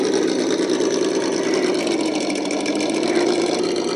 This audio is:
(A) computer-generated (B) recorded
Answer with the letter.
B